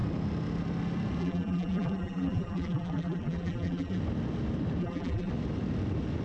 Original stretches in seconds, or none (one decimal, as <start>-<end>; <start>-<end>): 0.0-1.2; 4.0-4.8; 5.3-6.2